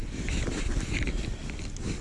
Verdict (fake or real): fake